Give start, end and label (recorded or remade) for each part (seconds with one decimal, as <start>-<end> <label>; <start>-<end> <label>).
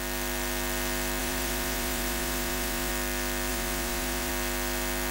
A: 0.0-1.2 recorded; 1.2-2.9 remade; 2.9-3.5 recorded; 3.5-4.3 remade; 4.3-5.1 recorded